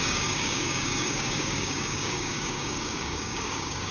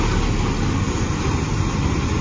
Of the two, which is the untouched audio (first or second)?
second